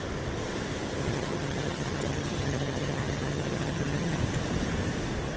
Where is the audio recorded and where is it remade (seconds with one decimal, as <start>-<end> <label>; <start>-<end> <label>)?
0.0-1.0 recorded; 1.0-4.2 remade; 4.2-5.4 recorded